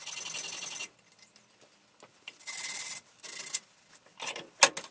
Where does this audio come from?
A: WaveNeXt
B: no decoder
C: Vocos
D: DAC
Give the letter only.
B